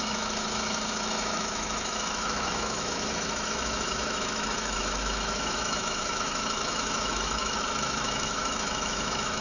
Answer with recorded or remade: remade